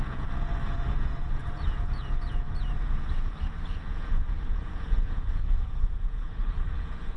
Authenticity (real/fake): fake